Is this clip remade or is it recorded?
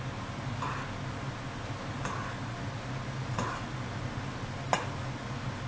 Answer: recorded